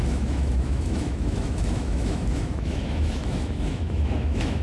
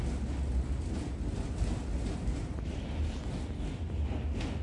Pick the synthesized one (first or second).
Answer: first